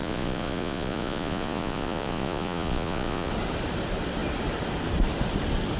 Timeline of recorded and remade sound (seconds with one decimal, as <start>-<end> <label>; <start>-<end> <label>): 0.0-3.3 remade; 3.3-5.8 recorded